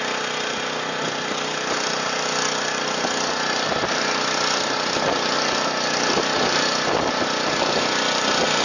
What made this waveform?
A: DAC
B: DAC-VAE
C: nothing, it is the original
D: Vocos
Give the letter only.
C